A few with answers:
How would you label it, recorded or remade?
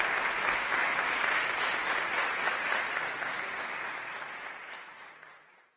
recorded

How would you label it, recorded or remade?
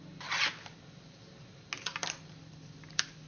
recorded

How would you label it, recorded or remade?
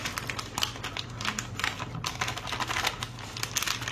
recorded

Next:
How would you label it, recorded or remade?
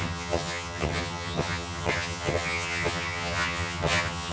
remade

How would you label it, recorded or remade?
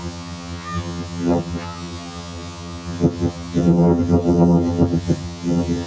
remade